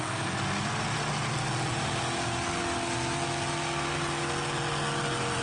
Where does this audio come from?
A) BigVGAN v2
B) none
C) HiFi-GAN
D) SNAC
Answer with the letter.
B